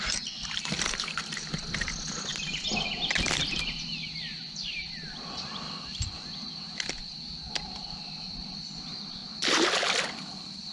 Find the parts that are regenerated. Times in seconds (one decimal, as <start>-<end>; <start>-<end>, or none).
none